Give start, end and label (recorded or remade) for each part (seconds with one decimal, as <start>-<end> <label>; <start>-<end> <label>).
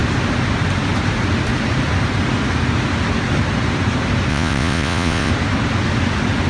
0.0-4.3 recorded; 4.3-5.3 remade; 5.3-6.5 recorded